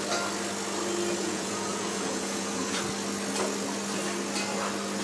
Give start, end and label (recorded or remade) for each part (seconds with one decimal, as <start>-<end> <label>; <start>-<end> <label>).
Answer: 0.0-1.2 recorded; 1.2-2.8 remade; 2.8-5.0 recorded